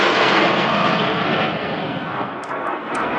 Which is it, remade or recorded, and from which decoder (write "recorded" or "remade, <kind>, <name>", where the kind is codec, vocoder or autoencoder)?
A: remade, codec, SNAC